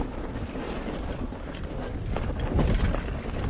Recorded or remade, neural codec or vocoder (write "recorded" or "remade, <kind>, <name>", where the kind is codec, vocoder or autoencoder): recorded